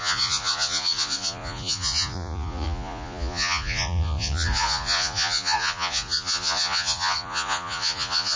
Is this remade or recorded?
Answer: remade